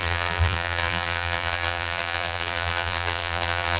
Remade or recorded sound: remade